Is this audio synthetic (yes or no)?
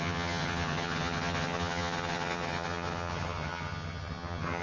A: yes